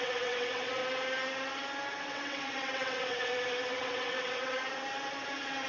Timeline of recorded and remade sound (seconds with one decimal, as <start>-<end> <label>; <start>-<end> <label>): 0.0-0.8 remade; 0.8-2.0 recorded; 2.0-3.3 remade; 3.3-3.8 recorded; 3.8-4.6 remade; 4.6-5.7 recorded